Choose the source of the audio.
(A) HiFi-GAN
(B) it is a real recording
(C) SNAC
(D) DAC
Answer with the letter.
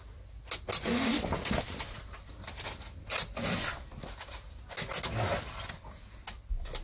B